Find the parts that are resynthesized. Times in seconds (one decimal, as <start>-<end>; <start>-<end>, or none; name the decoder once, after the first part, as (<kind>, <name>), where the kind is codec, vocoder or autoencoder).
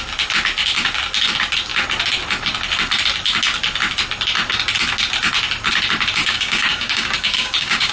6.2-7.9 (codec, DAC)